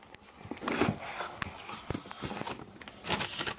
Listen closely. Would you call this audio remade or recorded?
recorded